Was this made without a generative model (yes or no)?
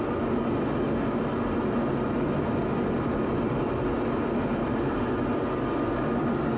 yes